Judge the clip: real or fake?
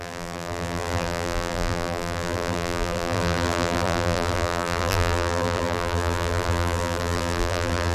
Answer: fake